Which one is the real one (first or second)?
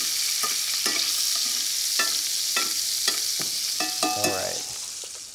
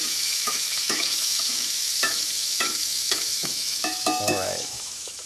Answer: first